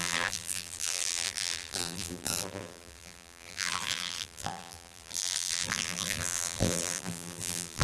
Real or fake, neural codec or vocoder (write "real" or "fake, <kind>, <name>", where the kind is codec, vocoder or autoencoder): fake, vocoder, BigVGAN v2